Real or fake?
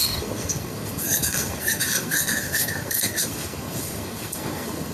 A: fake